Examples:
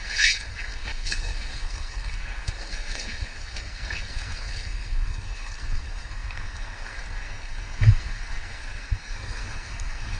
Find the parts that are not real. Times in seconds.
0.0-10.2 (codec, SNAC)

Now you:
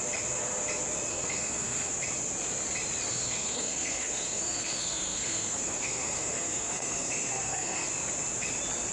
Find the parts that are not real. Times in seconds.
1.1-1.9 (codec, SNAC); 3.1-7.9

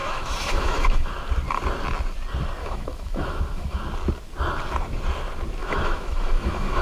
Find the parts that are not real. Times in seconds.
0.0-1.2 (autoencoder, DAC-VAE); 2.6-3.8; 5.6-6.8

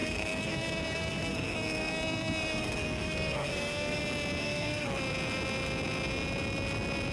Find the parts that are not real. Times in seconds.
0.0-4.0 (codec, SNAC); 4.4-4.9

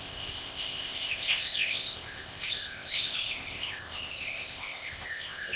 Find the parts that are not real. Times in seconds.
0.0-5.6 (codec, ZipCodec)

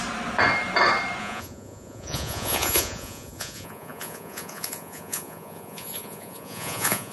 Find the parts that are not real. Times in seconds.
1.2-7.1 (vocoder, Vocos)

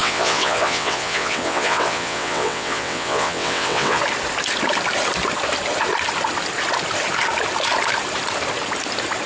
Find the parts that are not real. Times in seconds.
0.0-4.0 (vocoder, WaveNeXt)